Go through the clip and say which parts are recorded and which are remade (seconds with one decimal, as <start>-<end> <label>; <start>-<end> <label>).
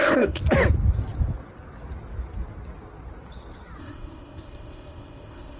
0.0-0.4 remade; 0.4-3.8 recorded; 3.8-5.6 remade